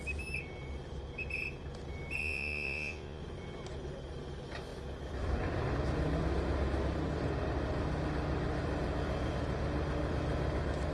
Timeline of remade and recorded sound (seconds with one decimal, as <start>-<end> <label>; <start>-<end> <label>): 0.0-2.2 recorded; 2.2-3.2 remade; 3.2-10.9 recorded